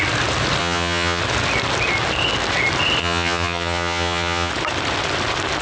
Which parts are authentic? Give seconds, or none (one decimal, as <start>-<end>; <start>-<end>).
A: 0.0-0.6; 1.2-3.0; 4.5-5.6